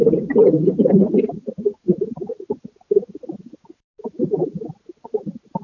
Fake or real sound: real